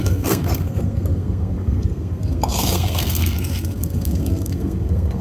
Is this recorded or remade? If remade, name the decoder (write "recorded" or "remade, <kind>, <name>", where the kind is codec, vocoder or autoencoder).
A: remade, codec, SNAC